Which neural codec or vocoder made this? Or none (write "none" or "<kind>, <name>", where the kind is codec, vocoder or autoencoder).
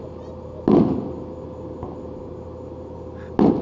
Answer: none